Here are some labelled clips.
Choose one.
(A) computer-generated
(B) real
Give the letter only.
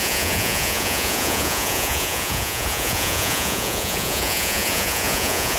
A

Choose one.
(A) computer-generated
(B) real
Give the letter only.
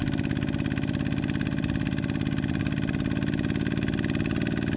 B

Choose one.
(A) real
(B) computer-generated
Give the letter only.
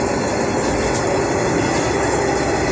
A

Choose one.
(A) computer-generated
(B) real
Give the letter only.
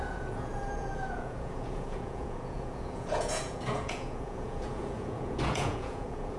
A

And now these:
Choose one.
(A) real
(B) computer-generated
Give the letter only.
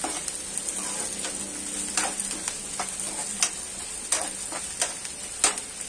A